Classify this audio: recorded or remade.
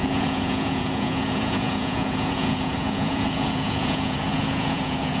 remade